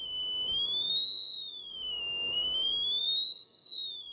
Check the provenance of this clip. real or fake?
fake